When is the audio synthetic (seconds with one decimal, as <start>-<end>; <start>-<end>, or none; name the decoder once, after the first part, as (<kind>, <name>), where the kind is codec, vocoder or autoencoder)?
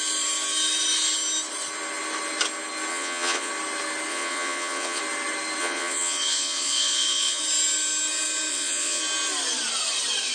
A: 2.9-3.5 (vocoder, Vocos); 4.1-5.0; 5.6-7.4; 8.5-9.0